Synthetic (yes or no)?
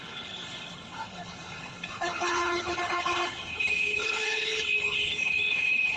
yes